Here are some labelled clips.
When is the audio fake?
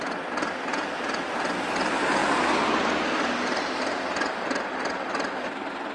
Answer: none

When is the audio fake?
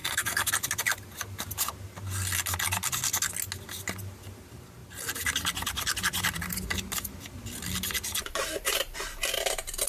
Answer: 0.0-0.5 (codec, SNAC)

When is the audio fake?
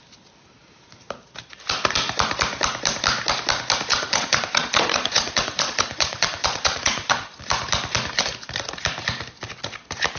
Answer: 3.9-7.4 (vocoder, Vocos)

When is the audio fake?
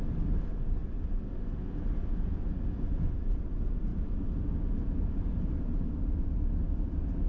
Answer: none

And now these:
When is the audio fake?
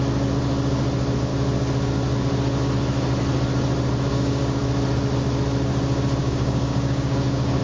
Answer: 4.1-4.6 (codec, DAC); 6.2-7.6